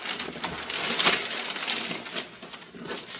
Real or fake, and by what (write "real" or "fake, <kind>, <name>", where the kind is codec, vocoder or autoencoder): real